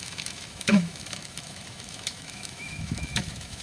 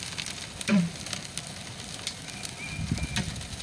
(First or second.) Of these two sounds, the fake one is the first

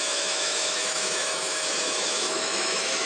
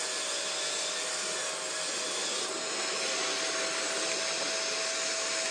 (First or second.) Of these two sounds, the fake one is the first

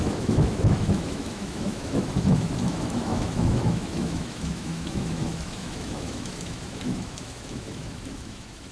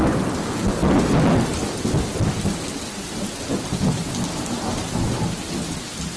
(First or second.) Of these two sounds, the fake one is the first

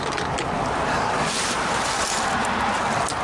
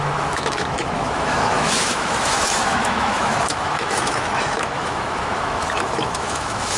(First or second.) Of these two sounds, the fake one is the second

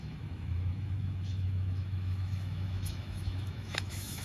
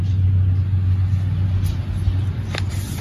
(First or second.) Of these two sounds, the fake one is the first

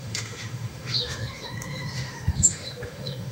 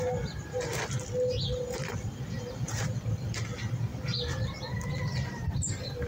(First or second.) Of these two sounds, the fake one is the first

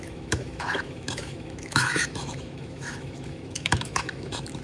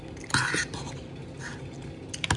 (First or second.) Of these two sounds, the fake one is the first